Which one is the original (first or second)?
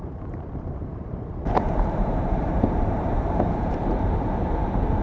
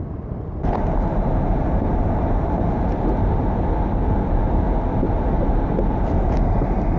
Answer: second